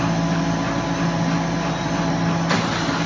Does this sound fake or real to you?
real